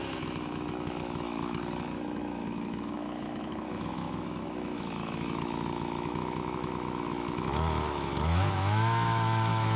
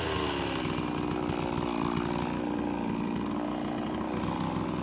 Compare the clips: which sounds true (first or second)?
second